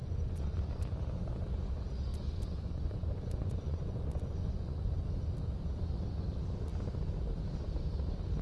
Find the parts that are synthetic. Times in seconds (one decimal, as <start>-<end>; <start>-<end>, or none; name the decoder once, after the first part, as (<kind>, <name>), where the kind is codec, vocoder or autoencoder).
0.0-0.9 (vocoder, Vocos); 2.1-4.9